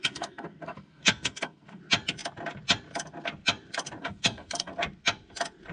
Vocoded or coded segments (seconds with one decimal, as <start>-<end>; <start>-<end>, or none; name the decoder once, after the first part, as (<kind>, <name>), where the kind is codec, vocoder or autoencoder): 0.0-1.8 (codec, SNAC); 4.0-4.7